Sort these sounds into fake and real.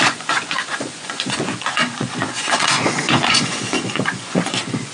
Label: fake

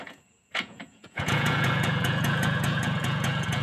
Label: fake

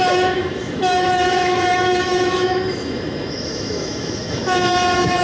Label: fake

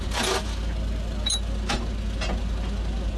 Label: real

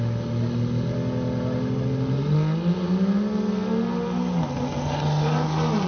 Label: real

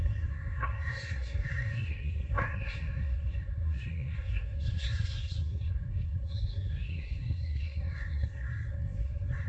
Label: fake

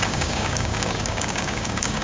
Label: fake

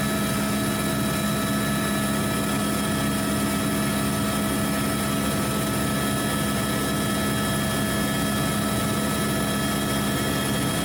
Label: real